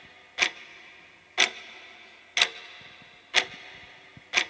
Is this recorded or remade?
recorded